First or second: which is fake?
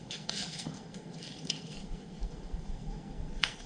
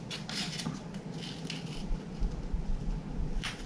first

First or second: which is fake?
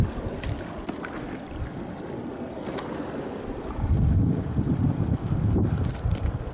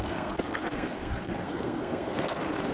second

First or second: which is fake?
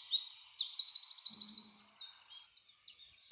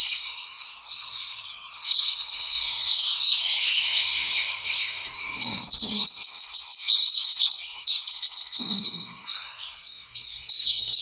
second